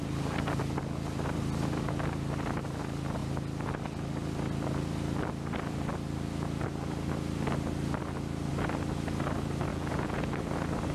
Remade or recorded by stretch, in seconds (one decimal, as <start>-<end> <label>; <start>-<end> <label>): 0.0-9.7 recorded; 9.7-10.4 remade; 10.4-10.9 recorded